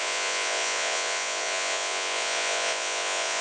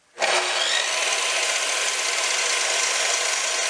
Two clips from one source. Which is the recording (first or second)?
second